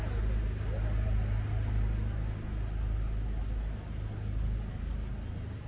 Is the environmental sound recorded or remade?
recorded